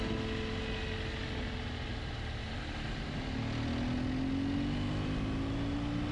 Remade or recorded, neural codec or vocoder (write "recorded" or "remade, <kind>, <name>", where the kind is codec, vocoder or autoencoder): recorded